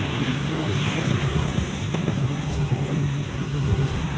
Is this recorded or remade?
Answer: remade